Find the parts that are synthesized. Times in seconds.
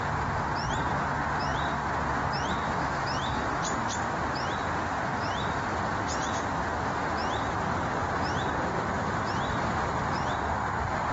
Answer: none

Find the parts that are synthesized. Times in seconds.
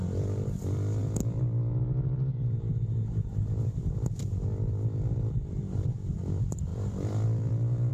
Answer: 0.0-7.9 (vocoder, BigVGAN v2)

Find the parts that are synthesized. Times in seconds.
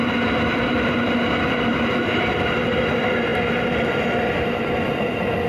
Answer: none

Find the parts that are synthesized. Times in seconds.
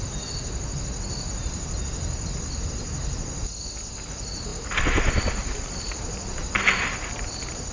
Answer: none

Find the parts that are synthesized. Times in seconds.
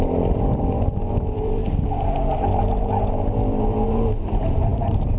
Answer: 0.0-1.6 (vocoder, BigVGAN v2); 2.6-5.2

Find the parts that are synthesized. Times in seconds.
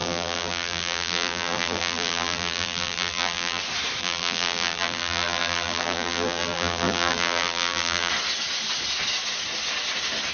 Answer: 0.0-3.6 (vocoder, BigVGAN v2); 4.0-8.1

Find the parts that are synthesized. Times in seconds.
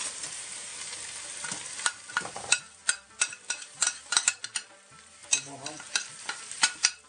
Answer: 0.0-0.7 (vocoder, BigVGAN v2); 2.1-2.8; 3.3-7.1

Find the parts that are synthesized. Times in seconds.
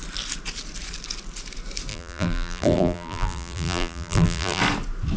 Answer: 1.9-4.6 (vocoder, BigVGAN v2)